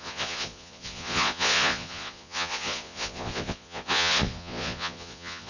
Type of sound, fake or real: fake